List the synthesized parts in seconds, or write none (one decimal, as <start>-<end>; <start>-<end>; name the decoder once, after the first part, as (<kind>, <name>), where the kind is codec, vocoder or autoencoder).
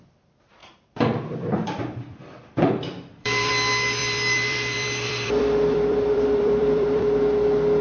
0.6-3.5 (vocoder, BigVGAN v2); 4.0-7.0